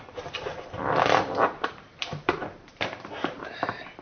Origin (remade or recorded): remade